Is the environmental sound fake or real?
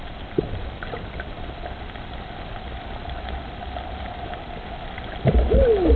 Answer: real